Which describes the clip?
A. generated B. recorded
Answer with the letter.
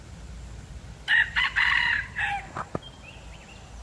B